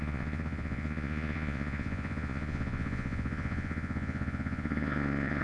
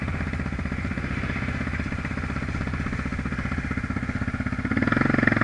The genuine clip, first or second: second